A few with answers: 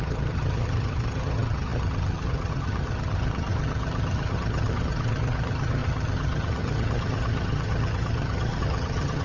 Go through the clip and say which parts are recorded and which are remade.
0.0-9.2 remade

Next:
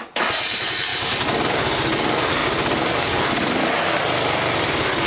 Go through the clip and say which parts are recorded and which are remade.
0.0-5.1 recorded

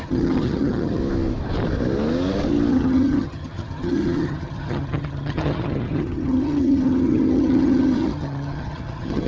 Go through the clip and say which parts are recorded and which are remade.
0.0-1.0 remade; 1.0-2.7 recorded; 2.7-9.3 remade

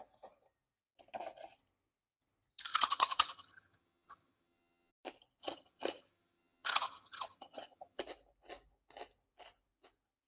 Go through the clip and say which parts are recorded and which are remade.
0.0-2.7 recorded; 2.7-4.9 remade; 4.9-5.4 recorded; 5.4-8.0 remade; 8.0-10.3 recorded

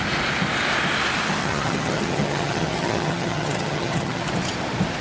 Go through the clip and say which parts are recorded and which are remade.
0.0-1.4 recorded; 1.4-4.3 remade; 4.3-5.0 recorded